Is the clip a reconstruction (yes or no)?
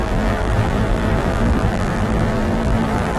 yes